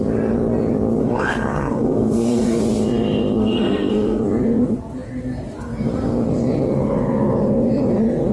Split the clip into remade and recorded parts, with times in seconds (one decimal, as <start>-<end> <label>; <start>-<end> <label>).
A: 0.0-1.0 recorded; 1.0-2.6 remade; 2.6-3.4 recorded; 3.4-4.2 remade; 4.2-8.3 recorded